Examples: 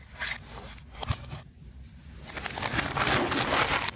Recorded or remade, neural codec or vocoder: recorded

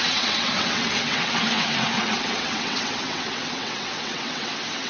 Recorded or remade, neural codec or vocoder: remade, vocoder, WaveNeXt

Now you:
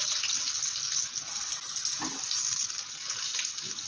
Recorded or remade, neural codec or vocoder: recorded